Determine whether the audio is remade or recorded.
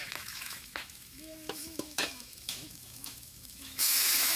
remade